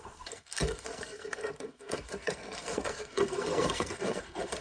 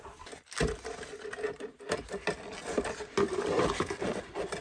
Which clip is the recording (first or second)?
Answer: second